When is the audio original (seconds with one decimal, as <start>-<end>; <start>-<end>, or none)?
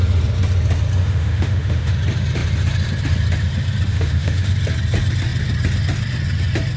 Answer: 0.0-1.0; 1.9-3.9; 4.5-6.8